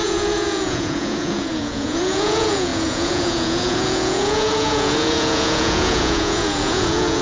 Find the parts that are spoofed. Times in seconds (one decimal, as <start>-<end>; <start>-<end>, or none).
0.0-7.2